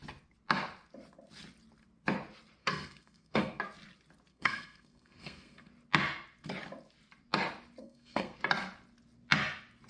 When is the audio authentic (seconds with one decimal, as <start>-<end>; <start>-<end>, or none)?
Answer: 0.0-2.6; 3.6-4.3; 5.7-7.8; 8.4-9.9